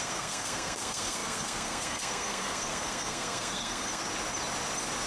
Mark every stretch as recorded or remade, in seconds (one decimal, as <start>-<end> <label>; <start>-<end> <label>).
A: 0.0-4.0 remade; 4.0-5.1 recorded